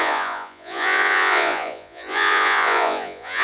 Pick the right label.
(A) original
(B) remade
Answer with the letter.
B